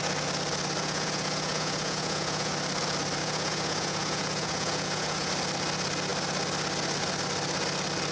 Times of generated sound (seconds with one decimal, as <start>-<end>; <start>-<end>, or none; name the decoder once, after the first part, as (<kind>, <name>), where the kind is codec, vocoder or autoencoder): 0.8-2.5 (vocoder, Vocos); 3.2-5.3